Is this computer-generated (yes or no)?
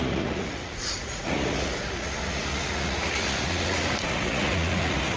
yes